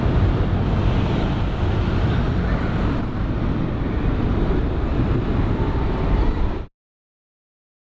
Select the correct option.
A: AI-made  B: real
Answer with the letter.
B